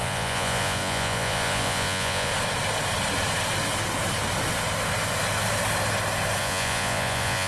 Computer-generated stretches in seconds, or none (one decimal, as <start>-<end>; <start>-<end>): 0.0-2.3; 6.4-7.5